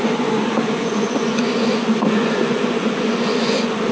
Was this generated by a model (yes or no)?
yes